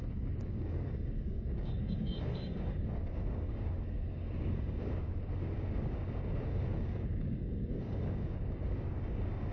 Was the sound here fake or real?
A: fake